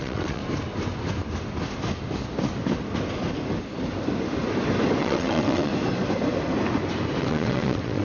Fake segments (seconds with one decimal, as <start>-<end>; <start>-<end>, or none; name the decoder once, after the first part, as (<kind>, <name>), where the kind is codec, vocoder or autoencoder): 0.0-0.4 (vocoder, WaveNeXt); 5.0-5.7; 7.2-8.0